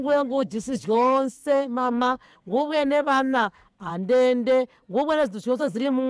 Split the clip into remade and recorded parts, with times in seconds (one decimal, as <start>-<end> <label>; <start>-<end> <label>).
0.0-3.9 remade; 3.9-5.6 recorded; 5.6-6.1 remade